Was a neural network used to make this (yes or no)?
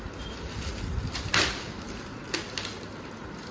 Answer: no